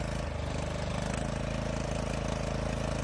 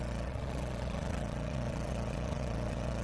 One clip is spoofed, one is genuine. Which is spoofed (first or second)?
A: second